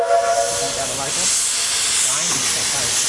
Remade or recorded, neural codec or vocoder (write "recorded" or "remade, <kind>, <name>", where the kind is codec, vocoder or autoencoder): recorded